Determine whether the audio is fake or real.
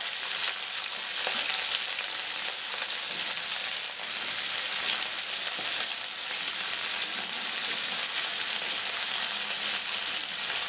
real